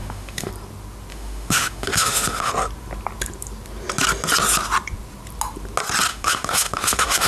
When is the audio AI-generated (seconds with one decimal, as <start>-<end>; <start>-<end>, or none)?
0.0-0.5; 1.1-2.5; 6.1-7.3